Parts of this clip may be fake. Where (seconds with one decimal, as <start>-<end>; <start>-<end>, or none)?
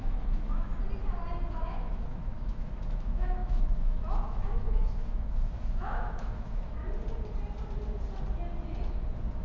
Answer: 0.0-0.7; 1.5-6.8